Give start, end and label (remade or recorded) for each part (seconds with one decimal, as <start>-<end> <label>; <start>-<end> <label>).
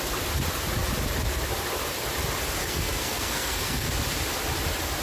0.0-2.6 recorded; 2.6-3.9 remade; 3.9-5.0 recorded